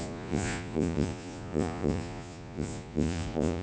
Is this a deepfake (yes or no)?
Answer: yes